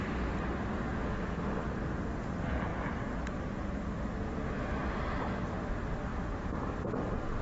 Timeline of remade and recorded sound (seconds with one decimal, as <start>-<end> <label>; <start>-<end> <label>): 0.0-7.4 recorded